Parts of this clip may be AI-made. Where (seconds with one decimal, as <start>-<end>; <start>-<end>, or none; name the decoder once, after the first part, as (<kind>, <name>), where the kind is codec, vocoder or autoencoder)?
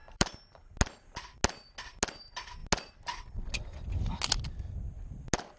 0.0-0.7 (vocoder, BigVGAN v2)